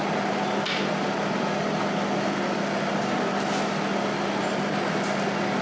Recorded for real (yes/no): yes